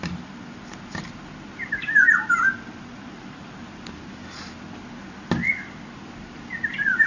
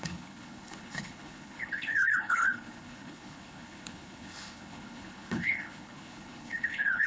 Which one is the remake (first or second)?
second